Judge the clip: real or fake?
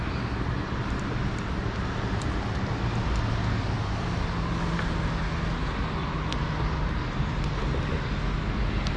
real